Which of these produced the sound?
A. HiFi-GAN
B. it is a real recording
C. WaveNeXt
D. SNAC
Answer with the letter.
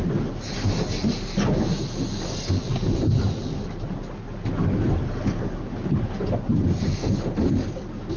B